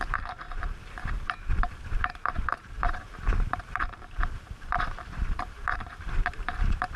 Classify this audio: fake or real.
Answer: fake